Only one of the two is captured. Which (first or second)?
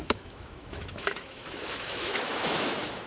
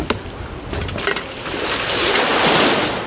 second